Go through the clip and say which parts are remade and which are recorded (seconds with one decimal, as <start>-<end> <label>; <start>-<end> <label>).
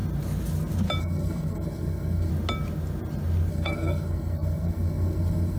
0.0-1.0 recorded; 1.0-2.3 remade; 2.3-3.5 recorded; 3.5-5.6 remade